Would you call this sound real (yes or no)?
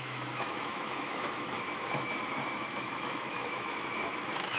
no